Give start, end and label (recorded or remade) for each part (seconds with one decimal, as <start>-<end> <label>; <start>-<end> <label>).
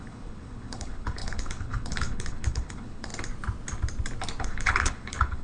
0.0-3.1 remade; 3.1-4.4 recorded; 4.4-5.4 remade